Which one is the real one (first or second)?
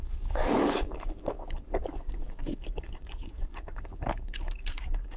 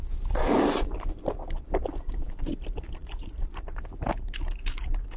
second